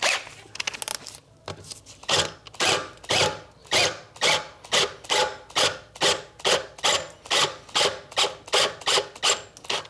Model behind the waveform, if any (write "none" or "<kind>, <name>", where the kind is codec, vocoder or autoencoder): none